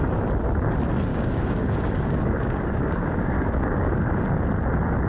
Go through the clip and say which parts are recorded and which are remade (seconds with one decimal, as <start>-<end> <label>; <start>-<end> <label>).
0.0-1.1 recorded; 1.1-4.2 remade; 4.2-5.1 recorded